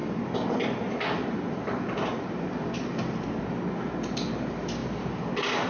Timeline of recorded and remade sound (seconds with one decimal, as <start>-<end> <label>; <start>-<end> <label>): 0.0-5.7 recorded